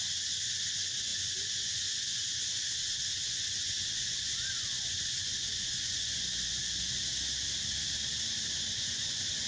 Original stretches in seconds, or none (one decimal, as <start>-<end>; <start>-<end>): 6.6-8.3